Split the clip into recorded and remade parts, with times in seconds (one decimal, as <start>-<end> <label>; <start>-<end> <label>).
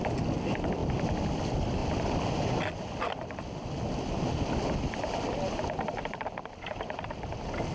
0.0-7.7 recorded